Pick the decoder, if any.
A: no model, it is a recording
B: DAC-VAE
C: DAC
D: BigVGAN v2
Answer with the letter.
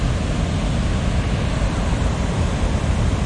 A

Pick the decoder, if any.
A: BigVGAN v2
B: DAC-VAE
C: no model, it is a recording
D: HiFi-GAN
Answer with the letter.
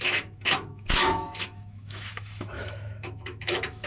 B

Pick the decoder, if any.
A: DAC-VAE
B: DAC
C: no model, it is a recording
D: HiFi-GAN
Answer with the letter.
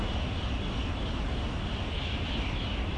C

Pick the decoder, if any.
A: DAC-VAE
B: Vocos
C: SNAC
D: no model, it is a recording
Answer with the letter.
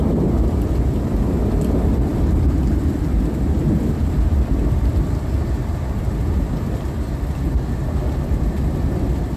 D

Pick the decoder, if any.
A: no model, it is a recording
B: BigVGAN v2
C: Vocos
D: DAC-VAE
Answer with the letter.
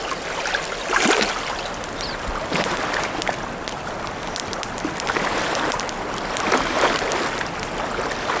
A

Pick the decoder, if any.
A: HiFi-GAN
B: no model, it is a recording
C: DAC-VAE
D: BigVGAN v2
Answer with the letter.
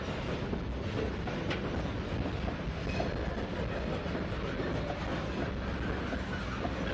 B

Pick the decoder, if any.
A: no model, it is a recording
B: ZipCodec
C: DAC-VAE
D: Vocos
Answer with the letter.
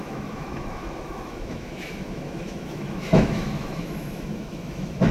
C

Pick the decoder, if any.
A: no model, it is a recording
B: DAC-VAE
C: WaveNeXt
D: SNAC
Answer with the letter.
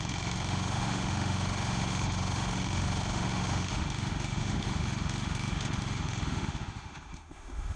B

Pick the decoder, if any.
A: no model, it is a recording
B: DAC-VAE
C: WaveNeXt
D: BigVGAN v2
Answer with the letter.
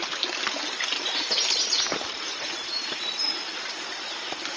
A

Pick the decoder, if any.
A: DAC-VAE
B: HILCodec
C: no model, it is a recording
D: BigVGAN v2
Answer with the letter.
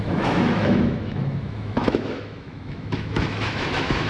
A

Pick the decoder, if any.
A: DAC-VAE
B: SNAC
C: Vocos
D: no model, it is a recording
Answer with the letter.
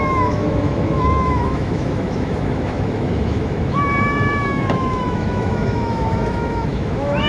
A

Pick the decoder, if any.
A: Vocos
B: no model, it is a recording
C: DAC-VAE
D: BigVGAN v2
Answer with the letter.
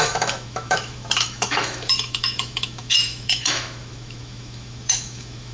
C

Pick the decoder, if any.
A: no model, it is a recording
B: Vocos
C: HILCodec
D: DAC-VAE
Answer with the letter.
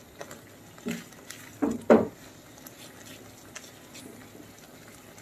A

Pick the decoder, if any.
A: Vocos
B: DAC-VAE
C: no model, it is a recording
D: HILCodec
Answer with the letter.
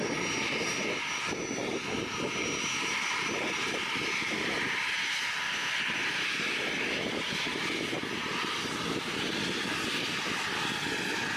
C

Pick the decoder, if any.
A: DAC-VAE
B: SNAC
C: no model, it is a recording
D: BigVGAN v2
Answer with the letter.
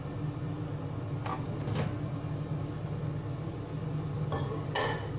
C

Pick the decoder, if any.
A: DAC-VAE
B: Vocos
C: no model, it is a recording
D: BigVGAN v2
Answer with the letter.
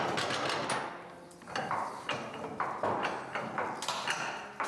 C